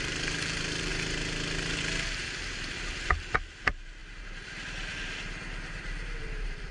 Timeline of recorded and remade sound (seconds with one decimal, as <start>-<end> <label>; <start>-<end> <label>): 0.0-0.9 remade; 0.9-2.5 recorded; 2.5-6.7 remade